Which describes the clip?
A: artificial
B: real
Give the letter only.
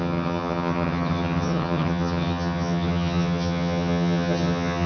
A